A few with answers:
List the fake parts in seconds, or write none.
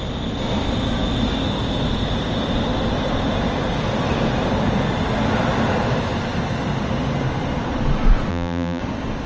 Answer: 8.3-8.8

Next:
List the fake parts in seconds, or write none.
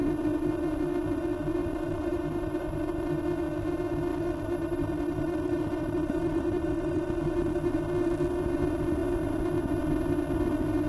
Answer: 1.6-3.2; 4.1-7.0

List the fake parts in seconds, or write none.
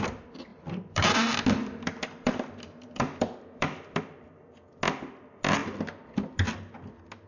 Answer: 0.5-1.1; 1.6-4.5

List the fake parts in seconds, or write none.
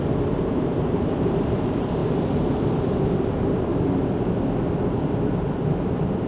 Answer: 0.0-3.7